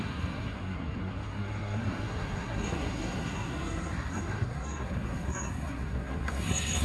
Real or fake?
fake